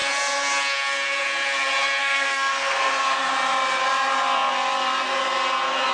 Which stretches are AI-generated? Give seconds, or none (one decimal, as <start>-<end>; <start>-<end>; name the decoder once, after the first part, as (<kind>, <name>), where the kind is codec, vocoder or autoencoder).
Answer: 2.0-3.3 (codec, SNAC)